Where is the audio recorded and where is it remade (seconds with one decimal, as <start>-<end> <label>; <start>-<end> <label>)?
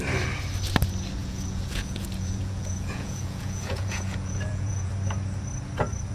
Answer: 0.0-1.2 recorded; 1.2-4.9 remade; 4.9-6.1 recorded